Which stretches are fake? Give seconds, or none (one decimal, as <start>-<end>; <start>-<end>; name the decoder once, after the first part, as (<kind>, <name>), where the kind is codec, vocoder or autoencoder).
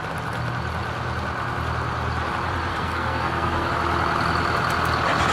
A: 2.7-3.7 (codec, SNAC)